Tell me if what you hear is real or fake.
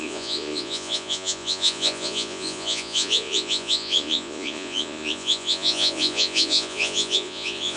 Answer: fake